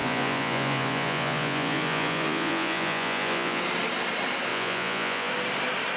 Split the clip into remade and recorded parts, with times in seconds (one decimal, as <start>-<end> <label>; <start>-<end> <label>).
0.0-3.6 remade; 3.6-4.5 recorded; 4.5-5.3 remade; 5.3-6.0 recorded